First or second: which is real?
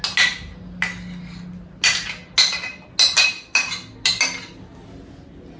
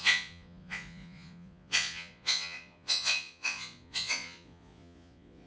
first